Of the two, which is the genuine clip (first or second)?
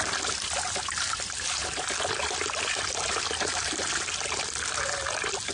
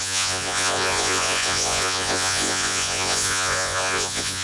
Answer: first